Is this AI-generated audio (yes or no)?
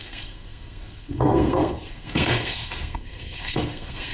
yes